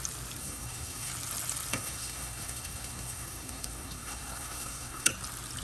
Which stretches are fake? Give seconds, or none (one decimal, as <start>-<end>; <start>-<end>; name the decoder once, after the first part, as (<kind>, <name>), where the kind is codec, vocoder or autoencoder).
0.4-1.1 (codec, SNAC); 1.7-5.1